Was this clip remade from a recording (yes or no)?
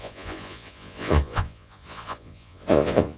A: yes